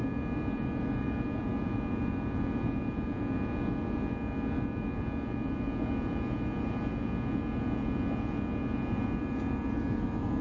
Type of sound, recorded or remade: remade